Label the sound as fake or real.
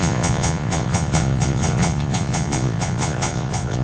fake